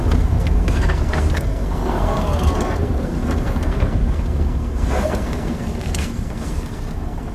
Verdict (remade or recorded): remade